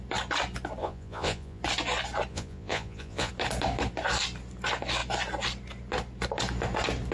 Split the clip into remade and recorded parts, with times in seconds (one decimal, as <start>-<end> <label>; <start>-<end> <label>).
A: 0.0-0.8 recorded; 0.8-1.6 remade; 1.6-2.3 recorded; 2.3-3.3 remade; 3.3-7.1 recorded